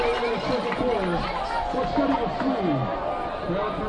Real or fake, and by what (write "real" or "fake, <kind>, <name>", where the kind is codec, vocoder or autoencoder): real